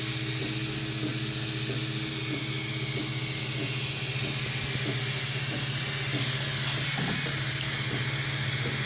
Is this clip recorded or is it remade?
recorded